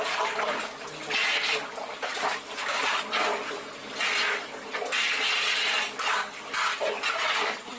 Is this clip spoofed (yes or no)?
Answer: no